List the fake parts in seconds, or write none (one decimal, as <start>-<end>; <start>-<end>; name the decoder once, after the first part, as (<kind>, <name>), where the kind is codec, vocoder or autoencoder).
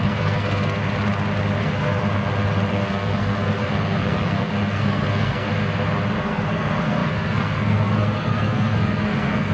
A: 0.0-0.8 (codec, SNAC); 1.6-2.0; 2.7-5.5; 6.2-9.5